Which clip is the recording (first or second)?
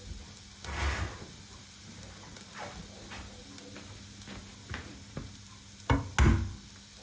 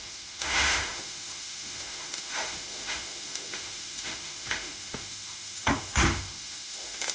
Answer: first